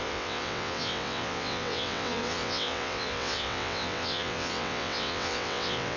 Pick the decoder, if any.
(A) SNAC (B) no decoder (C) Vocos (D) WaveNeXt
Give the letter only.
D